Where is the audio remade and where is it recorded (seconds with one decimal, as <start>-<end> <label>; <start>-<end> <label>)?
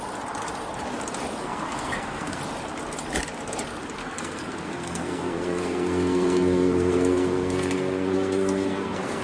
0.0-1.4 recorded; 1.4-2.4 remade; 2.4-4.0 recorded; 4.0-9.2 remade